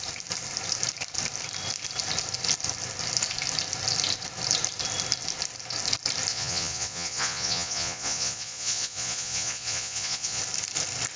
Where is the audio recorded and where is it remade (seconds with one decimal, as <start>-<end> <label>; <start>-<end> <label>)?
0.0-6.3 recorded; 6.3-10.4 remade; 10.4-11.2 recorded